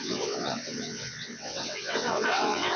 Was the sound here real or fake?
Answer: fake